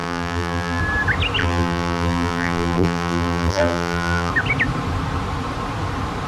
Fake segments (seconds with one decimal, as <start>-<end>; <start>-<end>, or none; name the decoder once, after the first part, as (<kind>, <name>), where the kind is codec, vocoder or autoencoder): 0.0-0.8 (vocoder, BigVGAN v2); 1.4-4.3